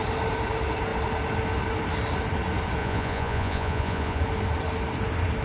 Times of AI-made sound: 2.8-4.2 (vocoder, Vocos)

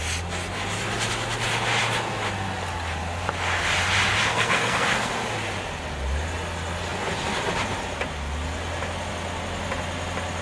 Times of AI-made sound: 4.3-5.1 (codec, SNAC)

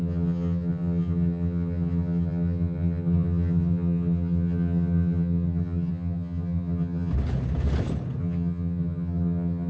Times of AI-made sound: 0.0-7.1 (vocoder, HiFi-GAN); 8.2-9.7